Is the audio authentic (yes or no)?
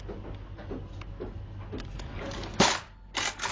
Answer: yes